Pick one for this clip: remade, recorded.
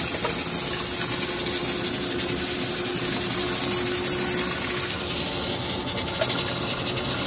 recorded